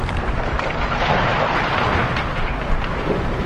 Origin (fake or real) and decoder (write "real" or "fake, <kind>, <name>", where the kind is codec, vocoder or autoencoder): real